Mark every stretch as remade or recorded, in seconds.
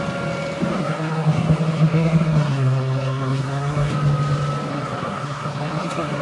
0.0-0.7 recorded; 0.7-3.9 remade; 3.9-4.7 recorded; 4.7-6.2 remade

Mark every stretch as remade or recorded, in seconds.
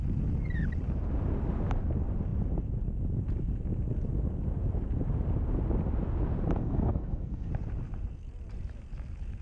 0.0-6.6 recorded; 6.6-7.5 remade; 7.5-9.4 recorded